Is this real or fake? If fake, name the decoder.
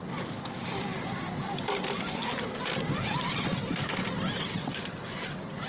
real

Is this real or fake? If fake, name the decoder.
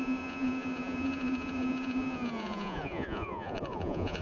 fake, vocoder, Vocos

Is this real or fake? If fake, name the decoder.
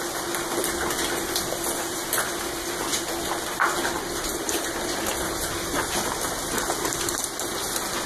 real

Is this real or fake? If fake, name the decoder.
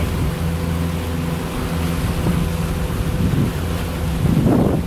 real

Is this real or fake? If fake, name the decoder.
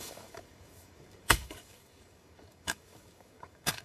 fake, codec, DAC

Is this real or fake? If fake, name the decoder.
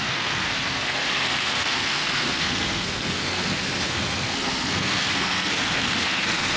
fake, codec, SNAC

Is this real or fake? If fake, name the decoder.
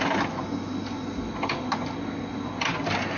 real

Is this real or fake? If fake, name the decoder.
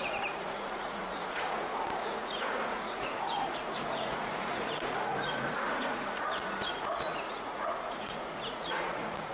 fake, vocoder, Vocos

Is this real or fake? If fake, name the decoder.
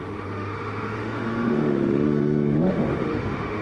fake, autoencoder, DAC-VAE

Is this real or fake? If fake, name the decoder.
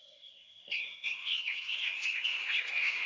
fake, codec, SNAC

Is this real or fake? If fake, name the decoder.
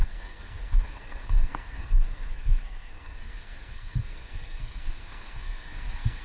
fake, codec, SNAC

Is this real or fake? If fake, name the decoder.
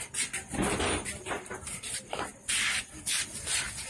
real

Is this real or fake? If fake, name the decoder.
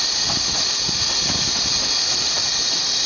real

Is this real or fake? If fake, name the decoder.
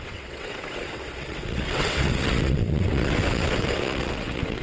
fake, vocoder, WaveNeXt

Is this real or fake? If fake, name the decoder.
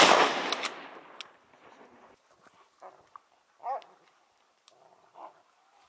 real